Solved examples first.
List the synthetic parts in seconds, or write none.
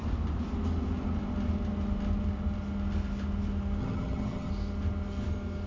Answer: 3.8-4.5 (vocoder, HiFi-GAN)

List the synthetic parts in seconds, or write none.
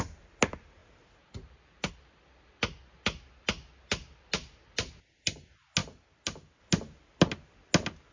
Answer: none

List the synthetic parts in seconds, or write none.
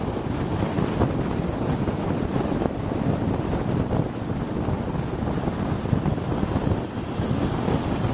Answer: none